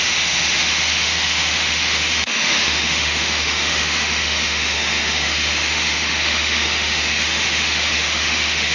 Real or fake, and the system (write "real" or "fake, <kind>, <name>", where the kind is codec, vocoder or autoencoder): fake, autoencoder, DAC-VAE